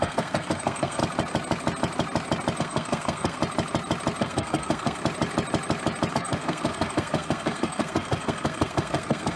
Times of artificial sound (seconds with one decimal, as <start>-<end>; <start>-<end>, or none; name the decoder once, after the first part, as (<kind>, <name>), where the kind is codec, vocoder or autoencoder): 0.0-1.0 (codec, SNAC); 2.6-3.4; 4.2-5.0; 6.1-9.4